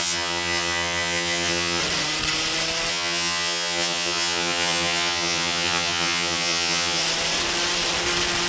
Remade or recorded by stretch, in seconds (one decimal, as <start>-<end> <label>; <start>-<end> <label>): 0.0-1.8 remade; 1.8-2.9 recorded; 2.9-7.0 remade; 7.0-8.5 recorded